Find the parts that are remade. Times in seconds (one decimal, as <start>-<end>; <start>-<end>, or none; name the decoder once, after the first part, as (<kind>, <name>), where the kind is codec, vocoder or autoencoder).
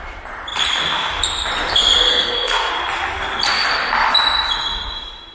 2.1-2.7 (codec, SNAC)